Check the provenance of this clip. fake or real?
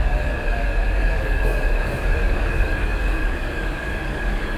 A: fake